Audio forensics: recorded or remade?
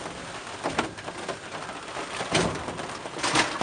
recorded